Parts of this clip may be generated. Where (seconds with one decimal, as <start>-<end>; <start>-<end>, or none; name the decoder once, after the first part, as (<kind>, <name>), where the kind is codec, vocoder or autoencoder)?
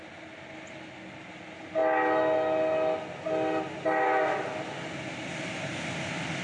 none